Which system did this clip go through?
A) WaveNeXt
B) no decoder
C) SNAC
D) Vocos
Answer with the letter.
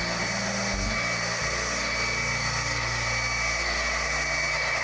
B